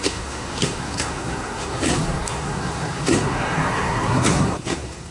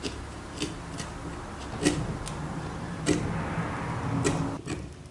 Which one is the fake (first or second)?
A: first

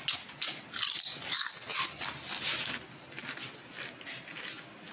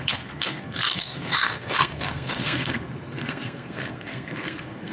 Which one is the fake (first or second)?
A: second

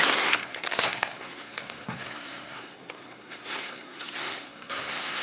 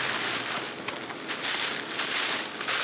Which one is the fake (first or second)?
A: first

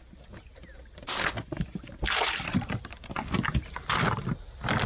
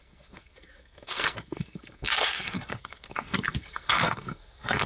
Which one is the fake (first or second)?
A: second